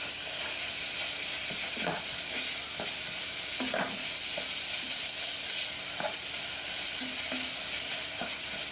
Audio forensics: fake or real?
real